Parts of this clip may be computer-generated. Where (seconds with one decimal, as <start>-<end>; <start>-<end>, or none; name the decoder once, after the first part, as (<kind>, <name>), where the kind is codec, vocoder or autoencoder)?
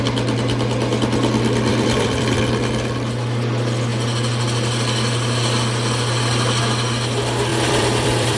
1.7-2.4 (vocoder, BigVGAN v2); 7.5-8.4